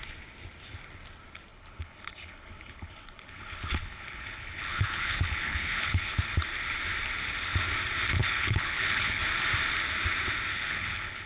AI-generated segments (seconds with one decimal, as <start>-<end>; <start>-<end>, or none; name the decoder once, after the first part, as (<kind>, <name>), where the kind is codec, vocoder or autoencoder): 1.5-6.2 (codec, HILCodec); 8.2-9.2; 10.5-11.3